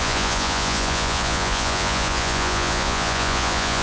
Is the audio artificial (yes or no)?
yes